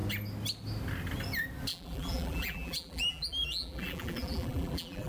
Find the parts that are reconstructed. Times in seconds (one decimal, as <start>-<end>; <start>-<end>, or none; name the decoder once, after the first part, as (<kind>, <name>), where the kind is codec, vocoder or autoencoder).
1.7-5.1 (vocoder, BigVGAN v2)